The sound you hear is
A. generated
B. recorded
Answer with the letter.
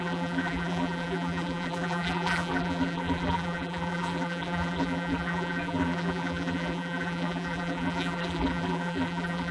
A